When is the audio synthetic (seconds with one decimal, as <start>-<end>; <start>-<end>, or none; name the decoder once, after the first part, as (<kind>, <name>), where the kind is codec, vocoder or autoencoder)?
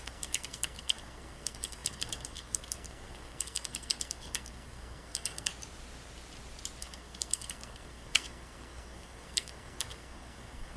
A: 0.0-5.5 (codec, SNAC); 6.8-10.8